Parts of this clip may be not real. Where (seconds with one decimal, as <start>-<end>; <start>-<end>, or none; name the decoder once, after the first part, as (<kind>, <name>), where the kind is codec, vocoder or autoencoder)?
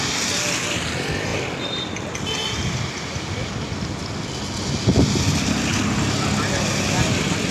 none